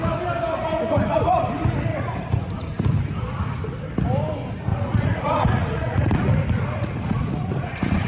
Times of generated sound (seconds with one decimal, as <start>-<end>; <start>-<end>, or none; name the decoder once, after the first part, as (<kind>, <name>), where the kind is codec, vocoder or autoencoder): 0.7-1.3 (vocoder, Vocos); 1.9-2.5; 4.7-8.1